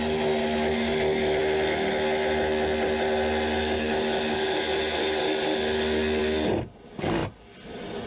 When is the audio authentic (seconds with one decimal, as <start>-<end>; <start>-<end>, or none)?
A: 0.0-7.2